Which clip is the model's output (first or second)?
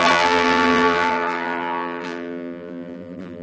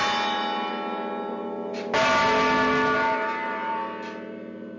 first